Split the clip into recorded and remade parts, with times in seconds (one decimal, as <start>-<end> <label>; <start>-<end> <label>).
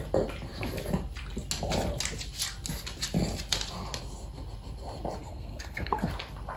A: 0.0-5.2 recorded; 5.2-6.1 remade; 6.1-6.6 recorded